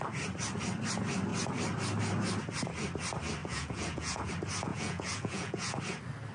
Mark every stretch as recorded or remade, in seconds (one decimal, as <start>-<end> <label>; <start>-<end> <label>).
0.0-3.4 recorded; 3.4-4.3 remade; 4.3-4.7 recorded; 4.7-5.8 remade; 5.8-6.3 recorded